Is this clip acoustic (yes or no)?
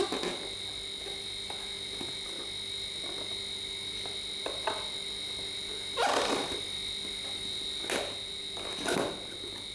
yes